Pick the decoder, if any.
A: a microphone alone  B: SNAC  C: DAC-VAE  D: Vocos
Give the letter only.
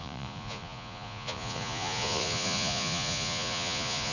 D